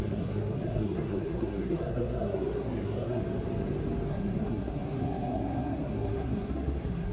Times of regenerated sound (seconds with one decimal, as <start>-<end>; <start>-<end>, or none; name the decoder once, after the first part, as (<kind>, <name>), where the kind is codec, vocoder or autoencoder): 0.0-3.2 (codec, SNAC); 4.1-7.1